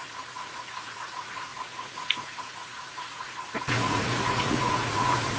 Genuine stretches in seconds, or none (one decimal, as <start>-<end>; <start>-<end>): none